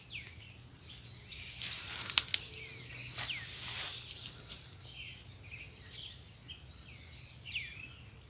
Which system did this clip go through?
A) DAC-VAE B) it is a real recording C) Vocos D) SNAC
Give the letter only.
B